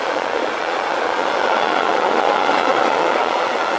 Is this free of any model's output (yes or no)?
no